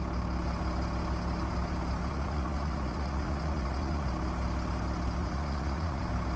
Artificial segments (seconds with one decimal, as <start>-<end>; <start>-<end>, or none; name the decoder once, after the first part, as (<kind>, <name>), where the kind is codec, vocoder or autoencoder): 2.1-4.1 (vocoder, Vocos); 5.2-6.0